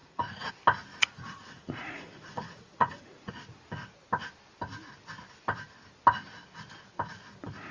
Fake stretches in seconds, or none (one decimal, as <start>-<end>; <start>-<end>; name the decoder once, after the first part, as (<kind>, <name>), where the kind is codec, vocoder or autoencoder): 0.0-0.5 (vocoder, Vocos); 0.9-3.3